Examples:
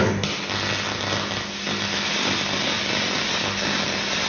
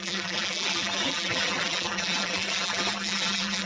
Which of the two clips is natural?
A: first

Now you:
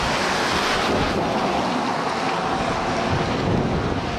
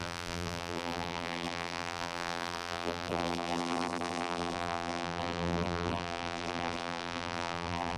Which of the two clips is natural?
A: first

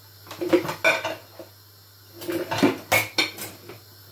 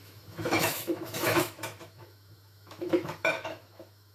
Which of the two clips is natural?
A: first